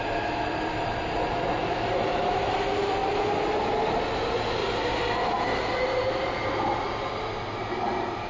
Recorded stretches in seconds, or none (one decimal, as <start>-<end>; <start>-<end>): 0.0-8.3